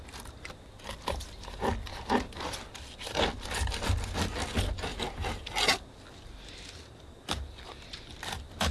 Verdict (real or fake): real